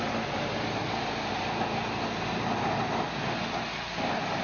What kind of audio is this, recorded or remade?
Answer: recorded